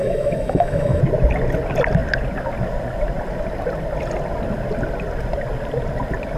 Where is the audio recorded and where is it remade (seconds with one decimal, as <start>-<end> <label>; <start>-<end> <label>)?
0.0-1.0 remade; 1.0-6.4 recorded